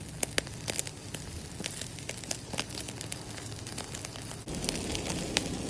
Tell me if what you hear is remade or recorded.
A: recorded